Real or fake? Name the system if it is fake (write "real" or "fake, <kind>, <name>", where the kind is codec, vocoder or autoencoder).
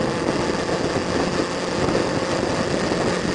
real